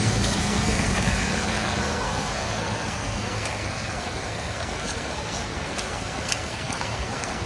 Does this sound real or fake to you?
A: fake